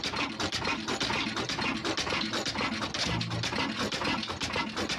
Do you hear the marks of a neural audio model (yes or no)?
no